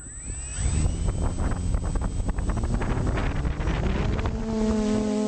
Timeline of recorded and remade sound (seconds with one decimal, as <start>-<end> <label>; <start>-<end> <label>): 0.0-5.3 recorded